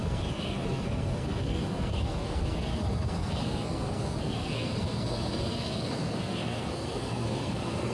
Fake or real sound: fake